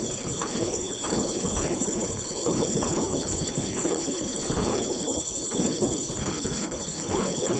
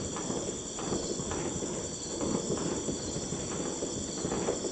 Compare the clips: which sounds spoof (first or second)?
first